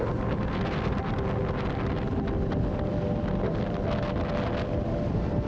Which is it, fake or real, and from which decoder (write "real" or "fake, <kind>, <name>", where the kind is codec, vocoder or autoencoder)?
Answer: real